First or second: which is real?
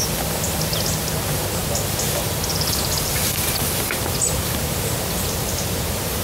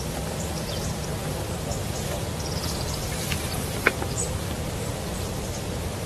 first